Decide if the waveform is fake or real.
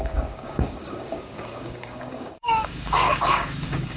fake